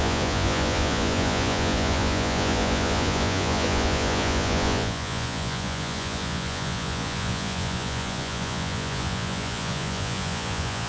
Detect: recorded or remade remade